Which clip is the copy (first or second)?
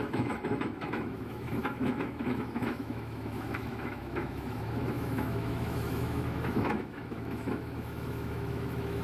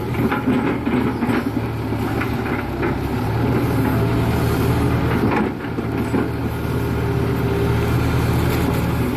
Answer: first